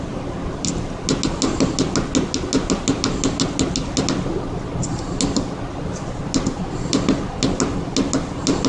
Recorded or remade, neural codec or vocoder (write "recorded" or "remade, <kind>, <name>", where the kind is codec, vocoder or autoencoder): recorded